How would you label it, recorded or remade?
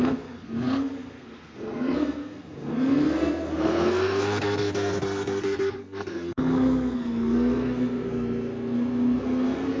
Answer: remade